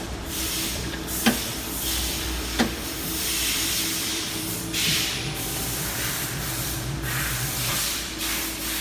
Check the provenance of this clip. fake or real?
fake